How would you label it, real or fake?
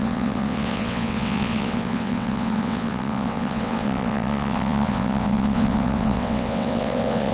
fake